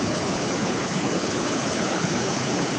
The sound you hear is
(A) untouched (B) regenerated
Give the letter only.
B